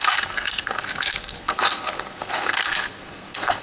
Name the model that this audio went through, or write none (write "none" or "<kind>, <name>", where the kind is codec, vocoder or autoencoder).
codec, SNAC